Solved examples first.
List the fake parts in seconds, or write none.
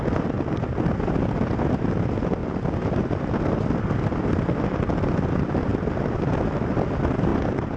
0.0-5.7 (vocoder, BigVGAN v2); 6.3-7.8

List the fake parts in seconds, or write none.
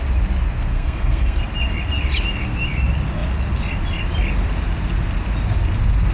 0.7-1.4 (codec, SNAC)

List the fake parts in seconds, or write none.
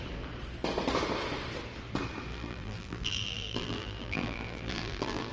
2.3-5.3 (vocoder, BigVGAN v2)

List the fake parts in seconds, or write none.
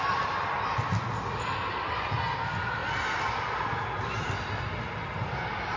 none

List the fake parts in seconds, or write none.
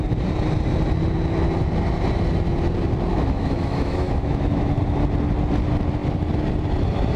3.1-4.8 (autoencoder, DAC-VAE)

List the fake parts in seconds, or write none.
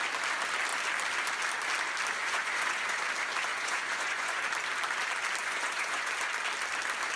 2.2-3.0 (vocoder, Vocos); 3.5-4.4; 5.4-6.1